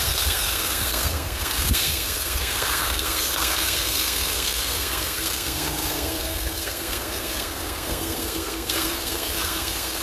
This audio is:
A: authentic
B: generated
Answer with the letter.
B